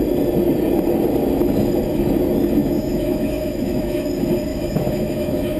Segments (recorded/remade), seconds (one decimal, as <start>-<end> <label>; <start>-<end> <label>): 0.0-2.6 recorded; 2.6-4.0 remade; 4.0-4.5 recorded; 4.5-5.6 remade